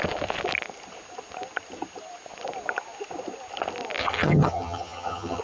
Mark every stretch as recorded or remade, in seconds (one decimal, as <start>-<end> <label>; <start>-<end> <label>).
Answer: 0.0-4.0 recorded; 4.0-5.4 remade